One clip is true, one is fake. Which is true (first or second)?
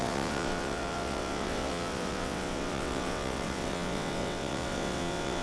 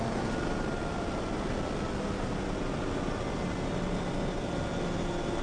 second